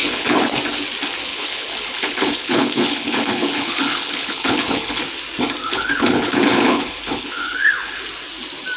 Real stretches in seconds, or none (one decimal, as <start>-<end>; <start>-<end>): 0.6-1.3; 5.0-5.6; 8.0-8.8